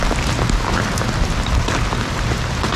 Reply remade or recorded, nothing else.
recorded